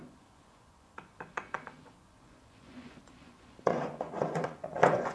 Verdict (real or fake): fake